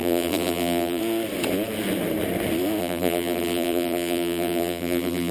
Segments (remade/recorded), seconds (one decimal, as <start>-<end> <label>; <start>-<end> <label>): 0.0-1.0 remade; 1.0-2.8 recorded; 2.8-5.3 remade